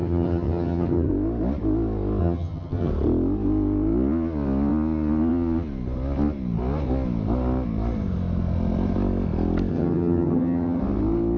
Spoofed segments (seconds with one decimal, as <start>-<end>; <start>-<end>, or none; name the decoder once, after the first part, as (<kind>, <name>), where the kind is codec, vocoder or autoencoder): 0.0-1.1 (vocoder, HiFi-GAN); 2.2-2.9; 9.7-10.8